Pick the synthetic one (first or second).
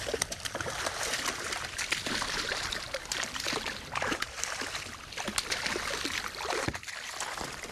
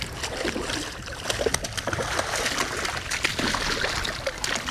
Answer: first